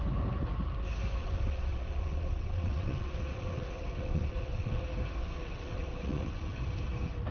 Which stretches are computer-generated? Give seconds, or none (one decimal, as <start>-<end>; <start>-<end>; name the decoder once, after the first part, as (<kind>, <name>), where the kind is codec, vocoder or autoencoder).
1.2-4.8 (vocoder, WaveNeXt); 5.2-6.6